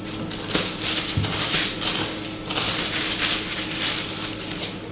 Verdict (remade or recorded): recorded